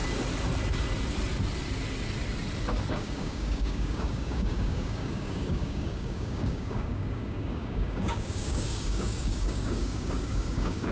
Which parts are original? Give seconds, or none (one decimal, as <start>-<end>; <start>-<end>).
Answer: 0.0-2.9